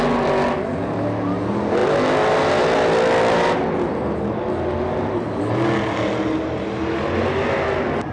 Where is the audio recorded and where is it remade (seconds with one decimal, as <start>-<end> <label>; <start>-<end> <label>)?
0.0-8.1 recorded